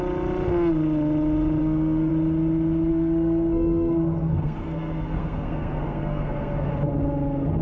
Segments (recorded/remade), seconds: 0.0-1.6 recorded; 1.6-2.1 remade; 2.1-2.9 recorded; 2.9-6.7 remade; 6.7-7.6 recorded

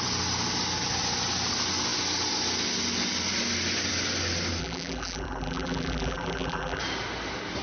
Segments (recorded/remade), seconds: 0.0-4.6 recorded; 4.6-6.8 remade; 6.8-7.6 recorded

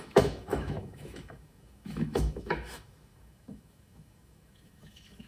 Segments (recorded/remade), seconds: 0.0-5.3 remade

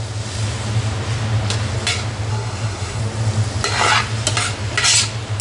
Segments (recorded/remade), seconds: 0.0-2.3 recorded; 2.3-3.0 remade; 3.0-5.4 recorded